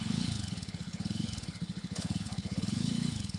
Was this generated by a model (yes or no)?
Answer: yes